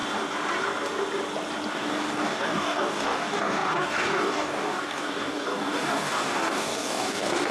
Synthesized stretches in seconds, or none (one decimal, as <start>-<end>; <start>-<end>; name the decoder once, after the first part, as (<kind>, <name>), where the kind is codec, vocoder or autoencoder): 1.7-7.5 (codec, DAC)